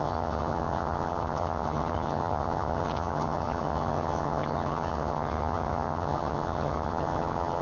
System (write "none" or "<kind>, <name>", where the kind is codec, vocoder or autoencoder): vocoder, HiFi-GAN